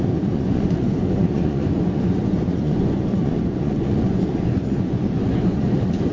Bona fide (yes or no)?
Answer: no